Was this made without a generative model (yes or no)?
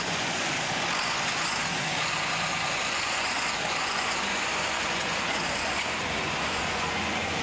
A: no